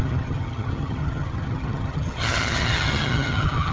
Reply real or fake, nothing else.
fake